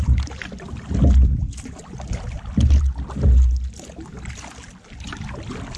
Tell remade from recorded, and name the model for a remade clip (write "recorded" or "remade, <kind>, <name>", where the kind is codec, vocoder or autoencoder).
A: recorded